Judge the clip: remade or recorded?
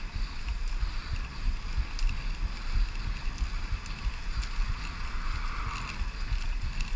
recorded